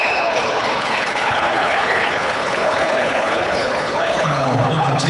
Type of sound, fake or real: fake